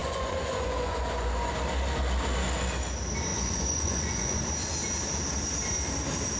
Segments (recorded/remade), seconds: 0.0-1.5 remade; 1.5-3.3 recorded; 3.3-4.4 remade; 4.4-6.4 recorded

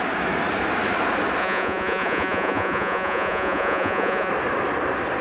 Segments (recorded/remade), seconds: 0.0-1.4 recorded; 1.4-4.3 remade; 4.3-5.2 recorded

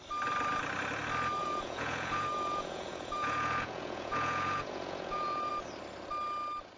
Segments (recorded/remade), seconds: 0.0-1.4 recorded; 1.4-5.5 remade; 5.5-6.8 recorded

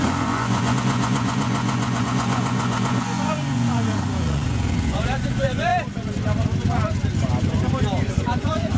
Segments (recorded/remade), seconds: 0.0-5.7 remade; 5.7-8.1 recorded; 8.1-8.8 remade

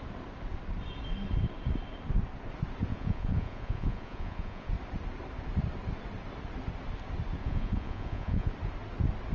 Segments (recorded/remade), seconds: 0.0-2.9 recorded; 2.9-4.7 remade; 4.7-7.4 recorded; 7.4-8.5 remade; 8.5-9.3 recorded

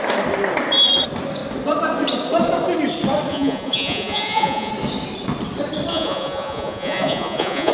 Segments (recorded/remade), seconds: 0.0-3.3 recorded; 3.3-4.7 remade; 4.7-5.9 recorded; 5.9-7.7 remade